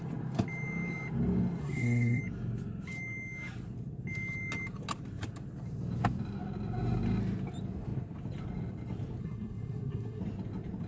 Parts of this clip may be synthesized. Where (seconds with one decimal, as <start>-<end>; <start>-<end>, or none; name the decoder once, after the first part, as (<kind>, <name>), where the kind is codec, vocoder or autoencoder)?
1.6-2.2 (codec, SNAC); 9.2-10.2